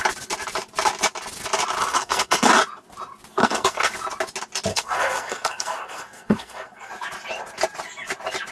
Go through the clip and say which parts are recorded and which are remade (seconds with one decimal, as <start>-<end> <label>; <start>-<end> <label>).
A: 0.0-1.8 recorded; 1.8-2.5 remade; 2.5-3.4 recorded; 3.4-3.9 remade; 3.9-4.7 recorded; 4.7-6.9 remade; 6.9-8.5 recorded